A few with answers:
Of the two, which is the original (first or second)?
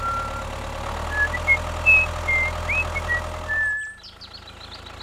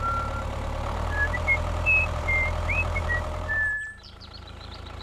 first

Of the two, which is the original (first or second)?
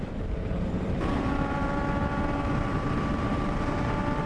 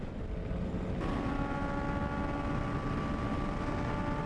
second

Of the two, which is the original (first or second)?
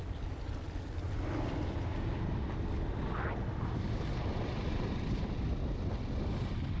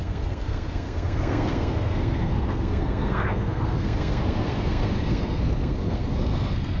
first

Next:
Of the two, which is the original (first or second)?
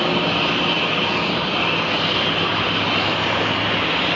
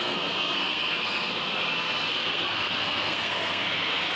first